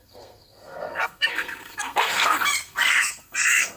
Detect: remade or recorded remade